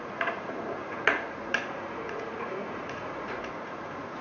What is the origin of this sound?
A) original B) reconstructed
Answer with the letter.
B